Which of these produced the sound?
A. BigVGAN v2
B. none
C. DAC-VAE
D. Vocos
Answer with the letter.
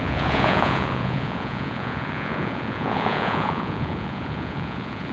D